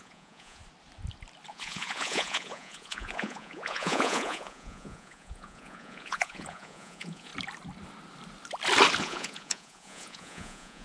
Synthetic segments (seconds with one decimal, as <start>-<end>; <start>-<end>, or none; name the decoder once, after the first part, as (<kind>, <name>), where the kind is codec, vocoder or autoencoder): 0.0-0.6 (vocoder, Vocos); 1.5-7.3; 9.0-10.8

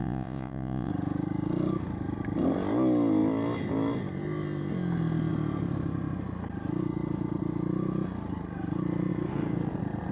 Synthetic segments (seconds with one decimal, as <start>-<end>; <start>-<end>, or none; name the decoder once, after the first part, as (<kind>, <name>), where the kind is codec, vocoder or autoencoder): 0.0-0.9 (vocoder, Vocos)

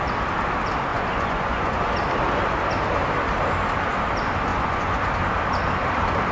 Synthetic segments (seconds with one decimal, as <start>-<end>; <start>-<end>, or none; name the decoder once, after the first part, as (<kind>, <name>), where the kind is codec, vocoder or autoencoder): 0.9-1.9 (vocoder, Vocos); 4.5-5.1